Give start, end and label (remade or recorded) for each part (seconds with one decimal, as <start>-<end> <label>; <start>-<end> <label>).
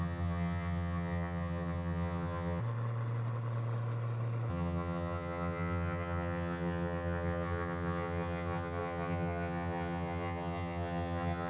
0.0-2.6 remade; 2.6-4.5 recorded; 4.5-11.5 remade